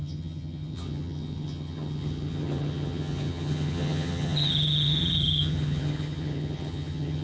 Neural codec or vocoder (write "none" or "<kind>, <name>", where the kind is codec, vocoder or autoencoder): vocoder, HiFi-GAN